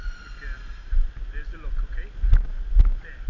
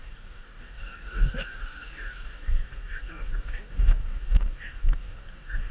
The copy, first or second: second